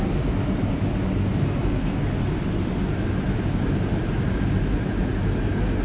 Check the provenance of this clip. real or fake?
real